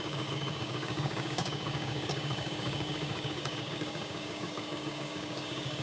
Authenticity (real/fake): fake